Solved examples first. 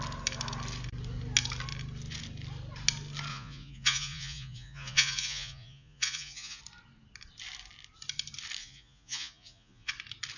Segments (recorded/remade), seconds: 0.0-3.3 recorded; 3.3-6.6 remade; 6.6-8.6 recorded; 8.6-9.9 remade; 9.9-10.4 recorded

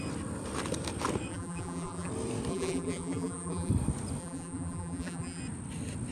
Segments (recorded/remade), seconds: 0.0-1.3 recorded; 1.3-2.1 remade; 2.1-2.5 recorded; 2.5-3.7 remade; 3.7-4.2 recorded; 4.2-5.4 remade; 5.4-6.1 recorded

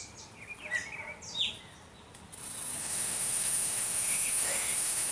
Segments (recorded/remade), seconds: 0.0-2.8 recorded; 2.8-5.1 remade

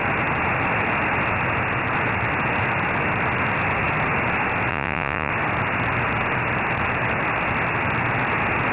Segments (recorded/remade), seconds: 0.0-4.7 recorded; 4.7-5.3 remade; 5.3-8.7 recorded